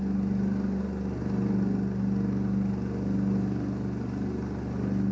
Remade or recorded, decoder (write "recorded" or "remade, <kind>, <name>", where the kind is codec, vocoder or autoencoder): recorded